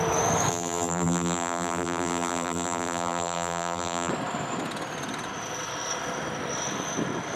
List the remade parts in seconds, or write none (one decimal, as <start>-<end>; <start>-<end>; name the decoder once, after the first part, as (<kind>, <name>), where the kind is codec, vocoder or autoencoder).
0.5-4.1 (vocoder, BigVGAN v2)